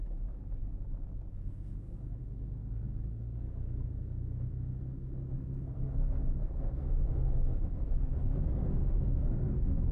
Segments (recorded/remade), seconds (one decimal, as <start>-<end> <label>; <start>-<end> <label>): 0.0-0.4 remade; 0.4-1.3 recorded; 1.3-9.9 remade